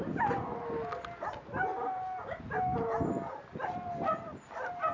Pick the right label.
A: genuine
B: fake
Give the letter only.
A